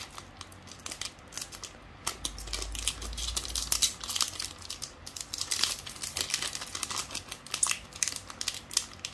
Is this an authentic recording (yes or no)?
yes